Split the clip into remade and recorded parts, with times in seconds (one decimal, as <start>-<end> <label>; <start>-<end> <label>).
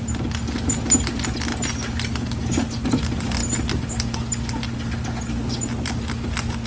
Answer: 0.0-6.7 recorded